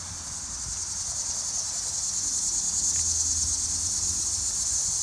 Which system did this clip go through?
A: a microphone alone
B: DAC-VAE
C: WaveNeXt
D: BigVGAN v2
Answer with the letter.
A